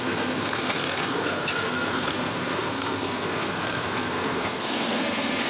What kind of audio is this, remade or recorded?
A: remade